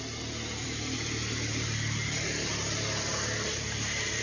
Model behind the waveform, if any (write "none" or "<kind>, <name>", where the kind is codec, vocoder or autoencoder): vocoder, BigVGAN v2